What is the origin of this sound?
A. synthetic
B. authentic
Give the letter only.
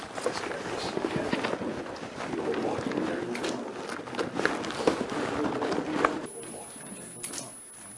B